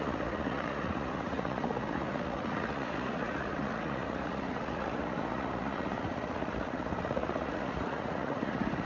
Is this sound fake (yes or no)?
yes